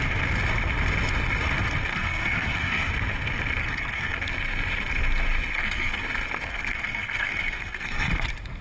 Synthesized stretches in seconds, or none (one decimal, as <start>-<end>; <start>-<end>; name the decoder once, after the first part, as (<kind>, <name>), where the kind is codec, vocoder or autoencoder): 1.9-2.9 (codec, SNAC); 3.6-4.1; 5.5-6.0; 6.5-8.1